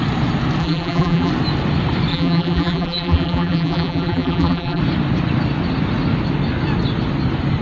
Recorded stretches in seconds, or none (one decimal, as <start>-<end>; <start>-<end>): 0.0-0.6; 1.3-2.1; 4.8-7.6